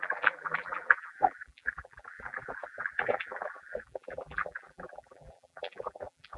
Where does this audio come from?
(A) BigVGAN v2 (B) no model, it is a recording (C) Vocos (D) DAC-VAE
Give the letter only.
A